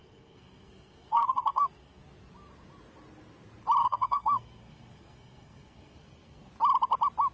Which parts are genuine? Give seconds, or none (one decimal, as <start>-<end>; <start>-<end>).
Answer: 2.0-3.8; 6.5-7.3